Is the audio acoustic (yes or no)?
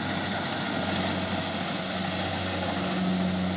yes